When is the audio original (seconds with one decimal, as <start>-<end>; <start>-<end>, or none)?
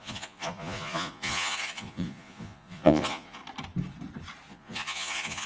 3.4-4.5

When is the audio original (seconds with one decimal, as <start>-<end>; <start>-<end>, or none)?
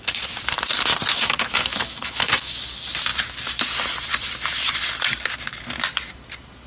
0.0-1.1; 2.6-6.7